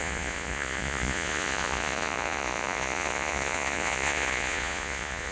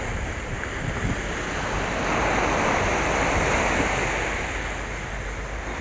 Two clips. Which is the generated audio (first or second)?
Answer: first